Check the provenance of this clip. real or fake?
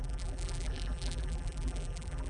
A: fake